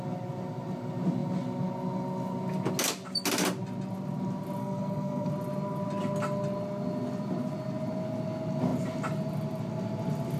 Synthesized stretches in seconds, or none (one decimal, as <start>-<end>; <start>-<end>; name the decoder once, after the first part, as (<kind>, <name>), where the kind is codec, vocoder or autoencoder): 4.6-5.3 (codec, SNAC)